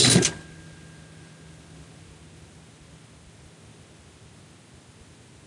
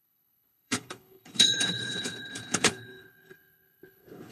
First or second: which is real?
first